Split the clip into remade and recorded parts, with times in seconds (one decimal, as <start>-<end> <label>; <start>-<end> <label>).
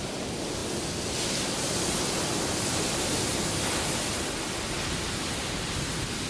0.0-6.3 recorded